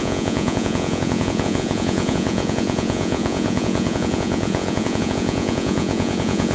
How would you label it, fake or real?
fake